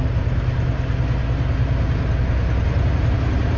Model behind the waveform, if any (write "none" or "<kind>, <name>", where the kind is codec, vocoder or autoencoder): none